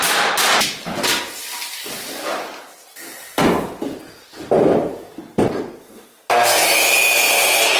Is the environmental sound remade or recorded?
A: recorded